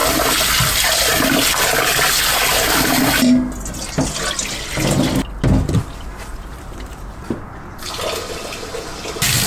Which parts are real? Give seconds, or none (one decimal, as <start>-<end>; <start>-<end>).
0.0-6.3; 7.4-9.5